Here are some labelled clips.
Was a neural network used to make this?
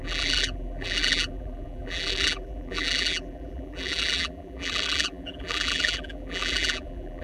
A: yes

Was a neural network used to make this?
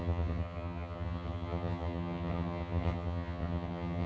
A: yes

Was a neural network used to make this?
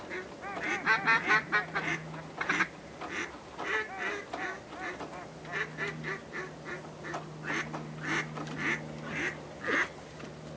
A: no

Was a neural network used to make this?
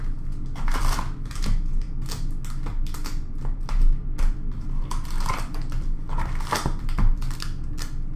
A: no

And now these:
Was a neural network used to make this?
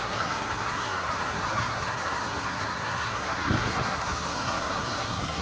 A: yes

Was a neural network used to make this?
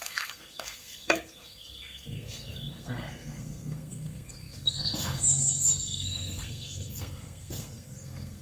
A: yes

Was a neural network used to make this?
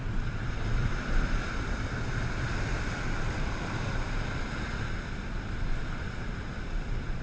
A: no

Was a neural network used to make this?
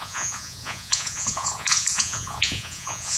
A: yes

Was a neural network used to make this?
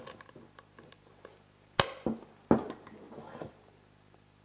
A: no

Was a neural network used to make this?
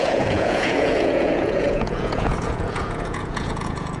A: yes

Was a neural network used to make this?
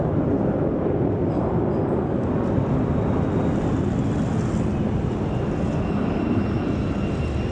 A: no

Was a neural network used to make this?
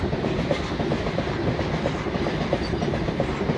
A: no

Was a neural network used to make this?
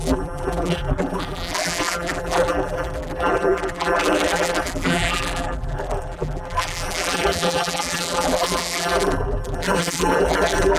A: yes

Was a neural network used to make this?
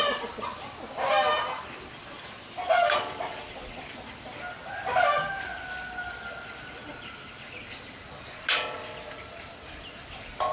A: no